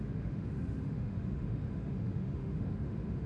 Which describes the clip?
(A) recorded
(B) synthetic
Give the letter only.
B